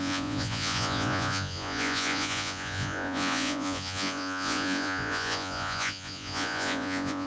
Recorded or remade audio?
remade